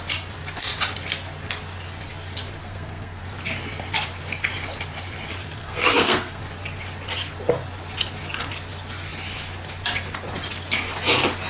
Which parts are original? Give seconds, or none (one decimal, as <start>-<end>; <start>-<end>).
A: 0.0-2.6; 3.2-5.6; 6.4-11.5